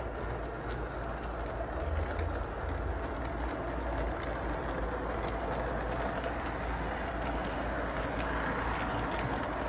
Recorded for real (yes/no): yes